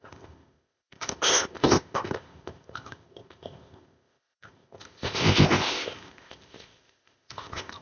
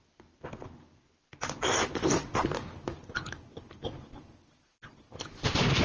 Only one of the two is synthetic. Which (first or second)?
first